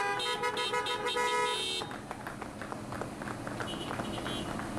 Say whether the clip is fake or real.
real